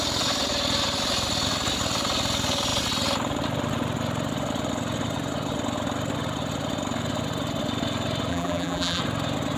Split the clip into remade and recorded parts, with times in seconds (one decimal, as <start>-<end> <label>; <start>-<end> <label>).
0.0-8.3 recorded; 8.3-9.0 remade; 9.0-9.6 recorded